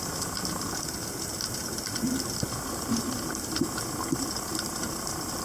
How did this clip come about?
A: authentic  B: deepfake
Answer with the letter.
A